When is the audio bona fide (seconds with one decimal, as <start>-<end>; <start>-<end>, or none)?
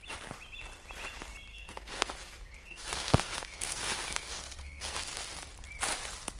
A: 0.0-1.5; 5.3-6.4